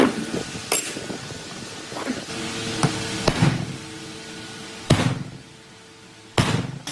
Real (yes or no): yes